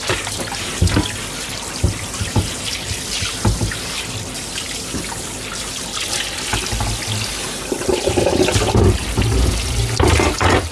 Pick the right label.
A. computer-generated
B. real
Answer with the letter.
B